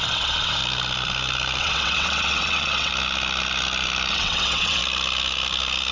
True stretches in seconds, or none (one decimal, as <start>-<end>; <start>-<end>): 0.6-1.6; 2.9-4.1; 4.8-5.9